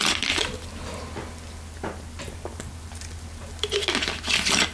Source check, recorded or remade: recorded